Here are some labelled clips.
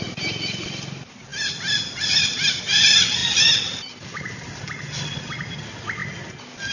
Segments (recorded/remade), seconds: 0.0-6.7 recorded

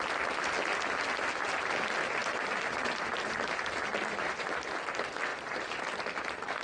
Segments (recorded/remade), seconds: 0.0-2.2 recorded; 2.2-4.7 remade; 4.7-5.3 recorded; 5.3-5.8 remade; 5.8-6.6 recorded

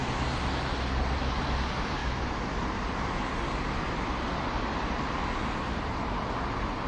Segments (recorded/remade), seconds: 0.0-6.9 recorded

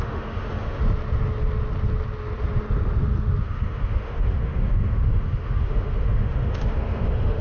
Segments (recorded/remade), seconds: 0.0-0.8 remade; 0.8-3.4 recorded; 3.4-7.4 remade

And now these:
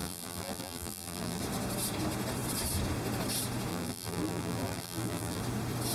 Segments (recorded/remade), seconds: 0.0-1.4 remade; 1.4-3.7 recorded; 3.7-5.4 remade; 5.4-5.9 recorded

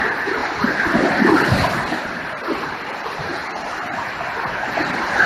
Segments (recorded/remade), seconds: 0.0-5.3 remade

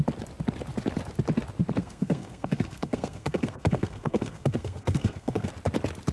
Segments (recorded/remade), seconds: 0.0-1.8 recorded; 1.8-5.5 remade; 5.5-6.1 recorded